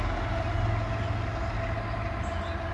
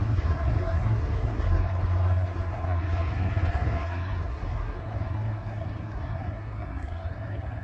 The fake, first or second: second